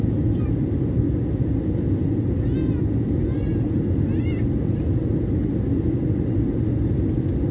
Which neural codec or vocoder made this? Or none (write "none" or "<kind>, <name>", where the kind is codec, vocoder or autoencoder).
none